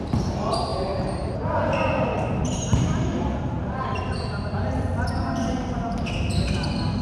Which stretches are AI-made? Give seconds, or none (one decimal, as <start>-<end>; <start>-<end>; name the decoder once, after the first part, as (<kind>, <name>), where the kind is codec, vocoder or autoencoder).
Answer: 0.7-4.9 (vocoder, BigVGAN v2)